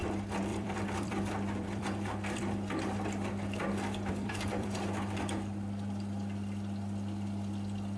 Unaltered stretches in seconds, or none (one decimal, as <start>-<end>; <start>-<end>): 0.0-0.5; 4.9-8.0